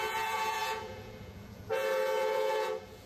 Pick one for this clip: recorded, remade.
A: remade